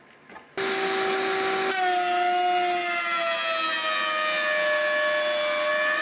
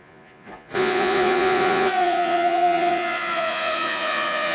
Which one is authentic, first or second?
first